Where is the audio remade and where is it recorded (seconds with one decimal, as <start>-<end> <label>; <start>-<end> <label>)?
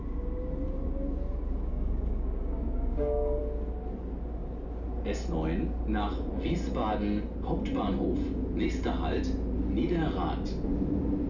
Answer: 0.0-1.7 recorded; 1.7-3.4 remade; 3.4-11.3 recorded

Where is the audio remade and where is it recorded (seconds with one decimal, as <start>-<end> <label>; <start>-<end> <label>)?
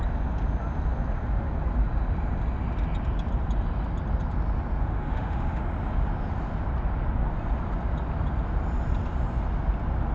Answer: 0.0-4.8 recorded; 4.8-5.6 remade; 5.6-10.1 recorded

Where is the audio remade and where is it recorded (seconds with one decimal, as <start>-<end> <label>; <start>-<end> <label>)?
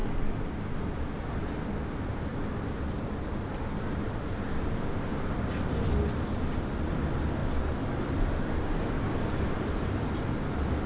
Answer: 0.0-10.9 recorded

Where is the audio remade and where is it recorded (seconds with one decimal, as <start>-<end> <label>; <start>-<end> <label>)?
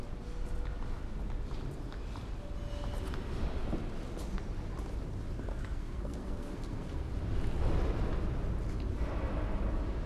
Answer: 0.0-5.5 recorded; 5.5-7.1 remade; 7.1-10.1 recorded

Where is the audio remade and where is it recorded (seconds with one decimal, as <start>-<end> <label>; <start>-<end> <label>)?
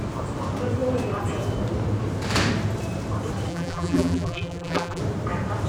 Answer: 0.0-3.5 recorded; 3.5-5.0 remade; 5.0-5.7 recorded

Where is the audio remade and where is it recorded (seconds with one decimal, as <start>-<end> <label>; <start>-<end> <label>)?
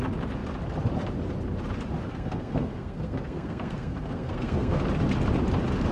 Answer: 0.0-2.1 recorded; 2.1-4.8 remade; 4.8-5.9 recorded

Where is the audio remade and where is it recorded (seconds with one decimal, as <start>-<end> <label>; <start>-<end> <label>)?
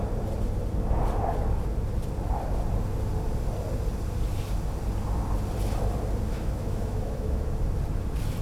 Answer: 0.0-6.3 recorded; 6.3-7.5 remade; 7.5-8.4 recorded